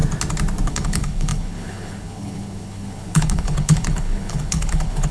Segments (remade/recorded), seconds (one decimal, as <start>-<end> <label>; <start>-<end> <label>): 0.0-0.7 recorded; 0.7-5.1 remade